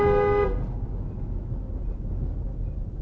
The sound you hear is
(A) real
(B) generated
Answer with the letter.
A